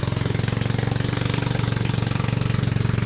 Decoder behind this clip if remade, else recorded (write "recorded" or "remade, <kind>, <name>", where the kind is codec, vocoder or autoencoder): recorded